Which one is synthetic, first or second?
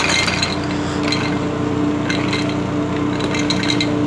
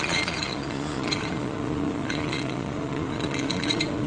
second